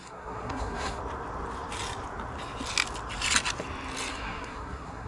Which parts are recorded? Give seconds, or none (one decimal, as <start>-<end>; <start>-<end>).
1.0-4.1